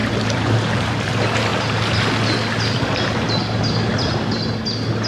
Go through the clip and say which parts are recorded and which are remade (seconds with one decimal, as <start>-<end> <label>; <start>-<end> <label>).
0.0-1.1 remade; 1.1-5.1 recorded